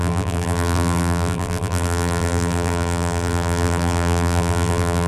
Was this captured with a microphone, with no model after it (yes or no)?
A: no